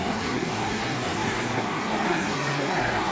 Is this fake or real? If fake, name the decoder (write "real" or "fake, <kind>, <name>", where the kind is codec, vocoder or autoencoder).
fake, codec, SNAC